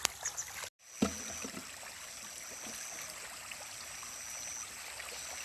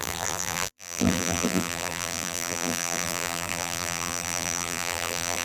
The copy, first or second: second